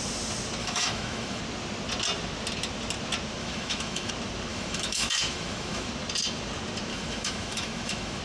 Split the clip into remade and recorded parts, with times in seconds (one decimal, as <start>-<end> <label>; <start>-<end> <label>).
0.0-0.6 recorded; 0.6-1.4 remade; 1.4-3.4 recorded; 3.4-4.1 remade; 4.1-4.5 recorded; 4.5-5.9 remade; 5.9-6.9 recorded; 6.9-8.2 remade